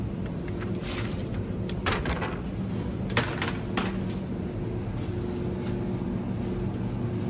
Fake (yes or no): no